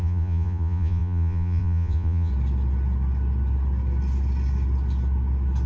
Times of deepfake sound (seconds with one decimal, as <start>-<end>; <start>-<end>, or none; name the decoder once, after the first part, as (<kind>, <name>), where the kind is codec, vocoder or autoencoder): 0.0-2.3 (vocoder, Vocos)